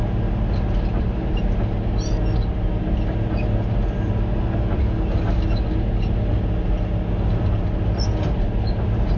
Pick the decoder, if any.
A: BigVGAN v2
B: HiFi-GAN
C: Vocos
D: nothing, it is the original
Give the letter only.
D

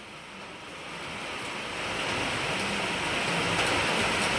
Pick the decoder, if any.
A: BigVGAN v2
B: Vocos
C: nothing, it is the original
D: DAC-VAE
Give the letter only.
C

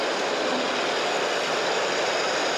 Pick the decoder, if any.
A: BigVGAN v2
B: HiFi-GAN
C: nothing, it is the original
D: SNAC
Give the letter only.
C